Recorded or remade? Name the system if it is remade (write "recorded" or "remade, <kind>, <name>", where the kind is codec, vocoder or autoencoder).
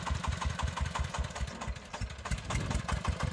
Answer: recorded